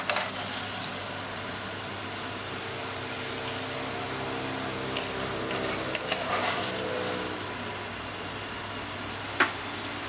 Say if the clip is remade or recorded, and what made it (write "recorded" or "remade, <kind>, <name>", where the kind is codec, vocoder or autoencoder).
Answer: recorded